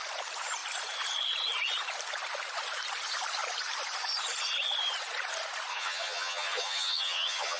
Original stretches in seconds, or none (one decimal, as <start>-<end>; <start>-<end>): 0.0-5.7